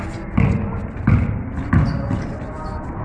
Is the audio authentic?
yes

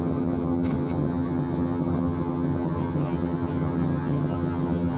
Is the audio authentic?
no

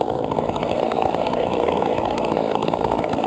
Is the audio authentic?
no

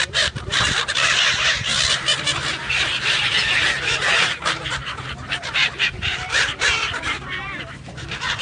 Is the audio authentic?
no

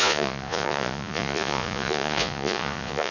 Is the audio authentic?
no